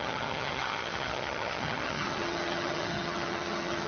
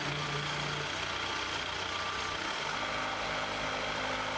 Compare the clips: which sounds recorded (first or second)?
second